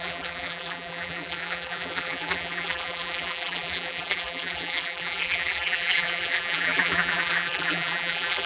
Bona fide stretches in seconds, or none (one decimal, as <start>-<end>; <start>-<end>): none